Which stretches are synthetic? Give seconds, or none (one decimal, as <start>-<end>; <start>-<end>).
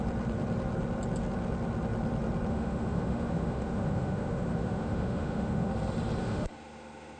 2.5-5.7; 6.2-7.2